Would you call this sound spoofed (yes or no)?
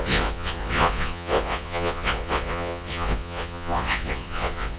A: yes